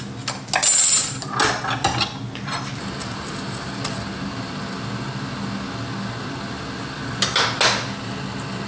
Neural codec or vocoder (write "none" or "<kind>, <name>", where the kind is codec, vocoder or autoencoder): none